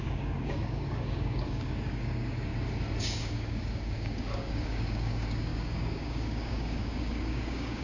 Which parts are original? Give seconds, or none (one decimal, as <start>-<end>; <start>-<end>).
2.5-3.0